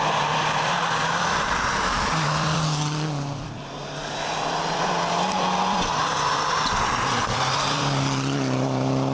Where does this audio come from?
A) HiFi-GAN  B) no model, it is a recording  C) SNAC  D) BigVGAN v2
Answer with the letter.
D